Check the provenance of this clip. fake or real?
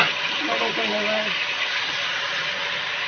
real